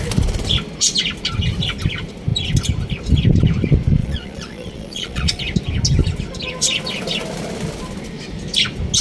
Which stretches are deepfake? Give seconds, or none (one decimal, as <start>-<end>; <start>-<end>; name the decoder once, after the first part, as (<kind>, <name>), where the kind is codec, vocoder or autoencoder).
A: 4.0-5.4 (vocoder, Vocos)